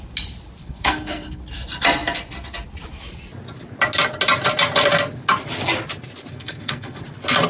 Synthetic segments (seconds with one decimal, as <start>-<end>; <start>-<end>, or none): 0.6-1.4; 6.3-7.0